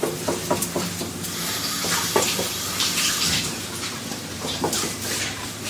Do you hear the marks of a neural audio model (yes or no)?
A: yes